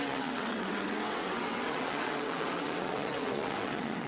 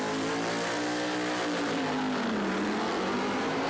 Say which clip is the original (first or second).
second